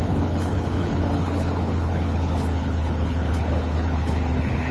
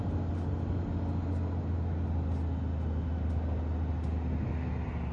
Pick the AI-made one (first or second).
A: first